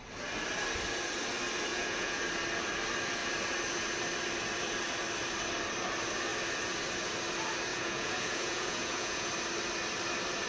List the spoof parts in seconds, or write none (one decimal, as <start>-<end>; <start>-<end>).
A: 1.7-2.2; 7.7-9.3

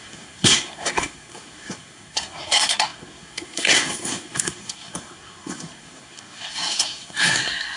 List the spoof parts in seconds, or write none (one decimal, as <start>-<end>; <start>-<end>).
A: 0.0-7.8

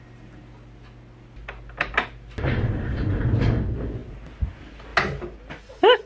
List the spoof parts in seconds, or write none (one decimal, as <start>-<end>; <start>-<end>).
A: none

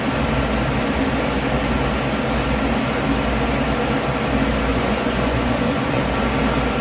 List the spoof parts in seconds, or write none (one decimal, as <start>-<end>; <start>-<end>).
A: 4.7-6.0

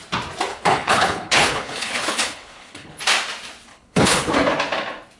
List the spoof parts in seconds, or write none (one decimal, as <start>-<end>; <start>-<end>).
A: 0.5-3.0; 3.7-4.3

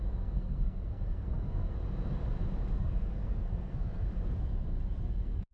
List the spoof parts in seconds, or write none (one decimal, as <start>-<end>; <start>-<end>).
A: 0.0-1.8; 2.8-4.1; 5.0-5.5

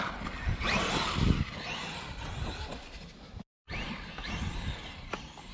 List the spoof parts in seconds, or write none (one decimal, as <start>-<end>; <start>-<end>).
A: none

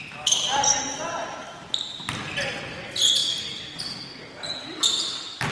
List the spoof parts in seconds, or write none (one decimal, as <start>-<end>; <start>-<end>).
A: 1.3-2.6